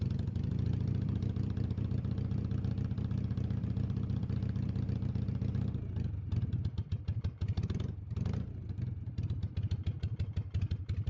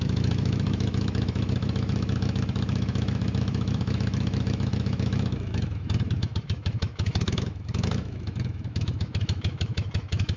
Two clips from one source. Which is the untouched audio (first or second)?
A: first